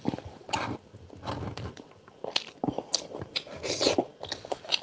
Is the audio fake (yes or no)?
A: no